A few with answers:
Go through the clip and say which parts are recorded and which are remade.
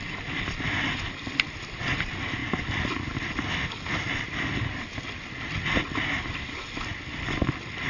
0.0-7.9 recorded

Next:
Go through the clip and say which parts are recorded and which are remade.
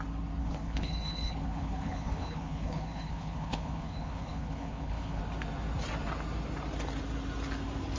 0.0-0.4 recorded; 0.4-5.2 remade; 5.2-8.0 recorded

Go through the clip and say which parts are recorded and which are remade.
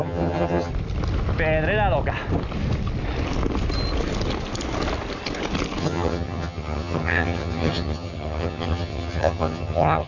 0.0-0.7 remade; 0.7-5.8 recorded; 5.8-10.1 remade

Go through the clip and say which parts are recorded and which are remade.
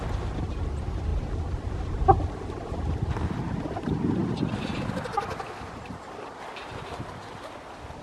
0.0-8.0 recorded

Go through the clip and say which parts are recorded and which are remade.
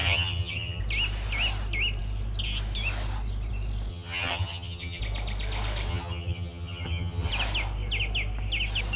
0.0-0.8 remade; 0.8-3.9 recorded; 3.9-5.0 remade; 5.0-5.9 recorded; 5.9-7.3 remade; 7.3-9.0 recorded